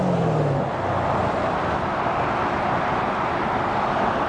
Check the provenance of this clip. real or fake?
real